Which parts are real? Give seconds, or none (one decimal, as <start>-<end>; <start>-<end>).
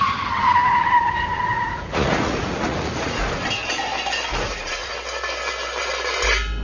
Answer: 0.0-1.5; 3.3-4.3; 4.9-6.6